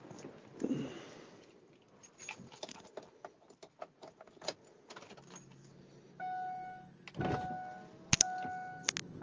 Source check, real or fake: real